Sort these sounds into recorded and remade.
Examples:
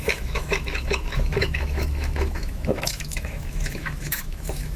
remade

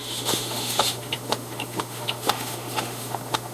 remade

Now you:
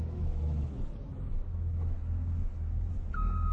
remade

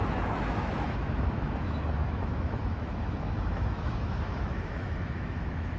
remade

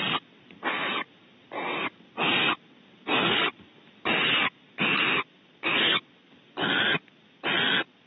recorded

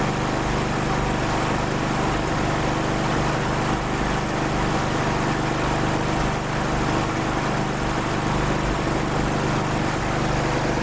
recorded